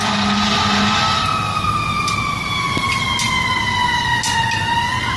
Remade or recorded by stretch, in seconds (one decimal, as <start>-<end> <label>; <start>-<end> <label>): 0.0-5.2 recorded